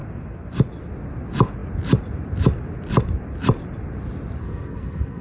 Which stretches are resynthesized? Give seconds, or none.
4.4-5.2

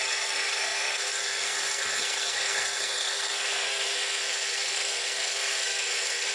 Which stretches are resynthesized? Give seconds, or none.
0.0-6.3